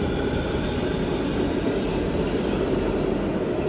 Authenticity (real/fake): real